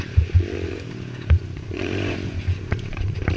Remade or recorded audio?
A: remade